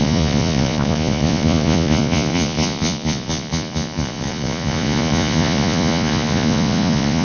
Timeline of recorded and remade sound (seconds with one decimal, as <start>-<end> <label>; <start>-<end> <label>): 0.0-7.2 remade